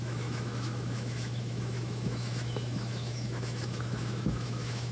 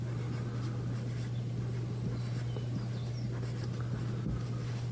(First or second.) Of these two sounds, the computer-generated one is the first